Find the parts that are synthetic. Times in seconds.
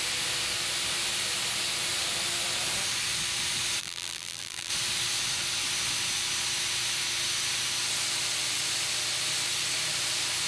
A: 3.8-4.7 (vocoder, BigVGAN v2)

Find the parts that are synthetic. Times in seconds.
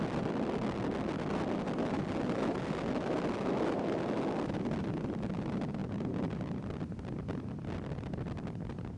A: 5.8-6.5 (vocoder, BigVGAN v2)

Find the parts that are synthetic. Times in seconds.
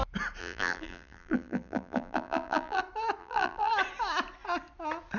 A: 0.4-2.8 (vocoder, BigVGAN v2); 3.2-3.7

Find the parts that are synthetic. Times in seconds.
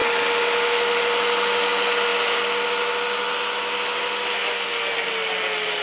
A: none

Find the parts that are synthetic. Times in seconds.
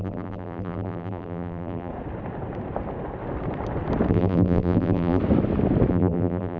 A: 0.0-1.9 (vocoder, BigVGAN v2); 4.1-5.2; 5.9-6.6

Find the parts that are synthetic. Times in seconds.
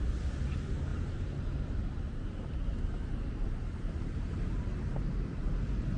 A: 0.9-4.5 (vocoder, BigVGAN v2)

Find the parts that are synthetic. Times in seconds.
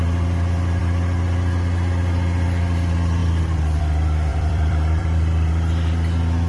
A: 3.2-3.8 (vocoder, BigVGAN v2); 4.3-5.5